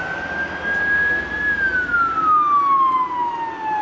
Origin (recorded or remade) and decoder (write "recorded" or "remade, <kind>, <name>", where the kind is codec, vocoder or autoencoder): recorded